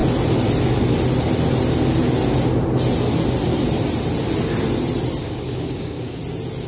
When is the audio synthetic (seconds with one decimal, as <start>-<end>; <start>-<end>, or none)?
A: 5.2-6.2